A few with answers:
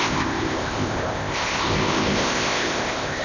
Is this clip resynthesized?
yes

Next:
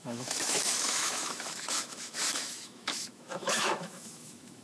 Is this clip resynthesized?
yes